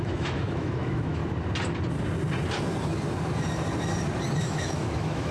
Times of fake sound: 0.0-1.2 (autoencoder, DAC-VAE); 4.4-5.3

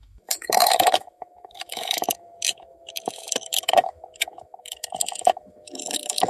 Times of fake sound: 0.0-6.3 (autoencoder, DAC-VAE)

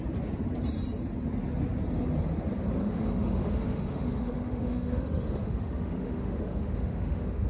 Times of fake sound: 2.8-7.5 (autoencoder, DAC-VAE)

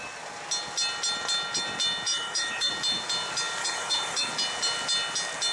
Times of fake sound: 2.1-2.7 (autoencoder, DAC-VAE); 3.6-4.3

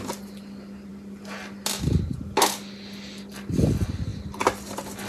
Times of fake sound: none

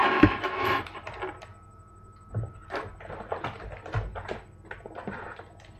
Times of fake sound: 0.0-0.8 (autoencoder, DAC-VAE)